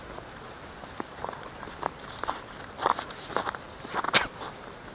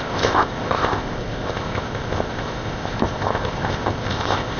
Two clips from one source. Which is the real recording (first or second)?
first